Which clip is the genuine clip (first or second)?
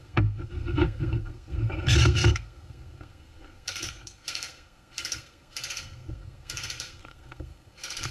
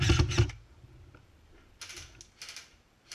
second